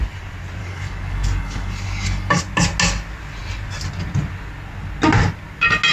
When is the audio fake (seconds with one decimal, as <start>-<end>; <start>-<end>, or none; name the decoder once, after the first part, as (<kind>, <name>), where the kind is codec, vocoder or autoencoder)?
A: 0.6-2.4 (codec, DAC)